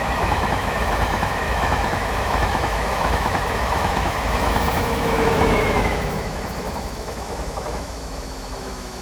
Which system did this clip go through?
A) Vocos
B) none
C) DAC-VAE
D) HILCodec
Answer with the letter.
C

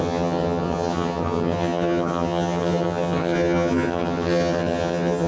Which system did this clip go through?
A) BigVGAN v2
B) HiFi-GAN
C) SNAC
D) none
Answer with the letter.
B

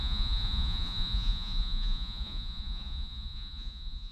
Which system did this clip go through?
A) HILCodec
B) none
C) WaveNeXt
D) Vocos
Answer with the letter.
D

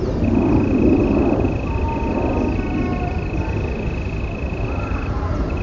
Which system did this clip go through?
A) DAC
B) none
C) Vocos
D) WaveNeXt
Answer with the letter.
B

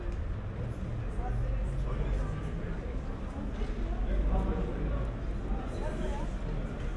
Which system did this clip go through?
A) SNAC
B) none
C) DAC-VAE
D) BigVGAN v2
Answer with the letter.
B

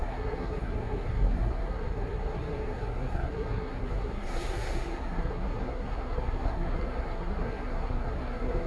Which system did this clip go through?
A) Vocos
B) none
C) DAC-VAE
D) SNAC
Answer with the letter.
D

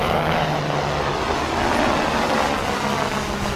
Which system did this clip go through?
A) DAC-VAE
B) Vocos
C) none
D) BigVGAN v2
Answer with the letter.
C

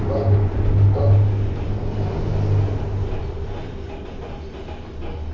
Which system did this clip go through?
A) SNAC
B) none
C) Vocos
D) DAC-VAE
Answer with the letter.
B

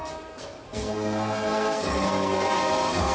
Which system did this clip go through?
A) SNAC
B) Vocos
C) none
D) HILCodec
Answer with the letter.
A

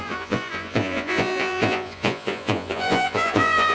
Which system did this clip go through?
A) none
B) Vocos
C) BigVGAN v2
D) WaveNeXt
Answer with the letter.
B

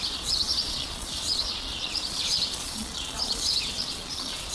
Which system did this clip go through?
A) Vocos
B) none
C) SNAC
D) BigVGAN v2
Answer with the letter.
A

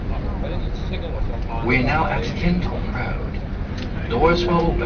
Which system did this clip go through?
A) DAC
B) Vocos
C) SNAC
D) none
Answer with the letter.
D